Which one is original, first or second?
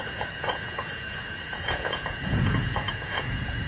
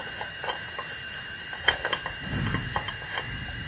second